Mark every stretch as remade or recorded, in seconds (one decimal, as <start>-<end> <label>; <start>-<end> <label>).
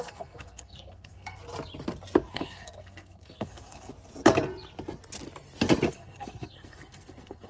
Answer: 0.0-1.4 remade; 1.4-2.3 recorded; 2.3-3.9 remade; 3.9-5.9 recorded; 5.9-7.5 remade